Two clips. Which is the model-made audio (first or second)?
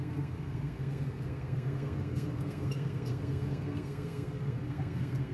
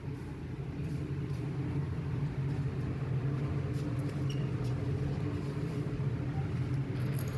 first